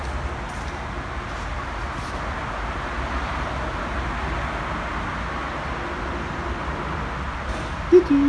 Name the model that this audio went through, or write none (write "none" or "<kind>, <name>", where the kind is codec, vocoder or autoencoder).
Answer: none